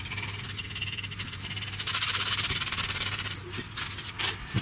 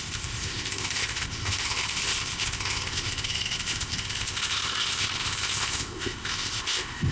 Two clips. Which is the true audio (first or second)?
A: first